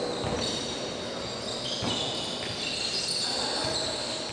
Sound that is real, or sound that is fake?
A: real